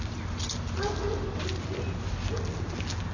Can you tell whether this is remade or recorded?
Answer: recorded